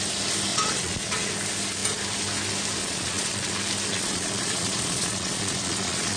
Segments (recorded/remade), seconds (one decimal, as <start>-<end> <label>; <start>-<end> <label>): 0.0-0.5 recorded; 0.5-1.3 remade; 1.3-2.8 recorded; 2.8-3.5 remade; 3.5-3.9 recorded; 3.9-6.2 remade